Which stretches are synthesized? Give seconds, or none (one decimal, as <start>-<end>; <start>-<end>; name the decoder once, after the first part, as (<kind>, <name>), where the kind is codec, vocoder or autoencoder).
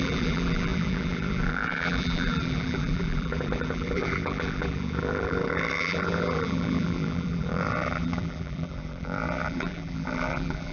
0.0-10.7 (vocoder, BigVGAN v2)